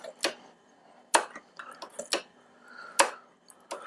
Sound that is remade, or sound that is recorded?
recorded